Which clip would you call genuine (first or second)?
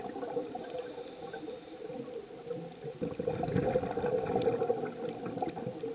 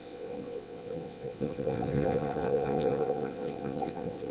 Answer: first